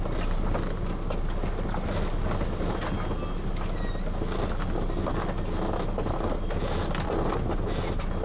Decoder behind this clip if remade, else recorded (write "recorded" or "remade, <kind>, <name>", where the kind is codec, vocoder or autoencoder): recorded